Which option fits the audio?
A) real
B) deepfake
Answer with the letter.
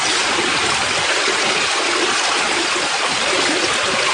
A